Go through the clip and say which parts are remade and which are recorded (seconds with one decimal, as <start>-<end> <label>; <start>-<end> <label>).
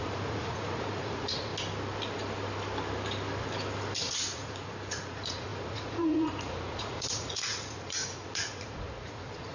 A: 0.0-1.5 remade; 1.5-4.0 recorded; 4.0-9.5 remade